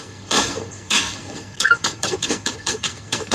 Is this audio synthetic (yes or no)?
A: yes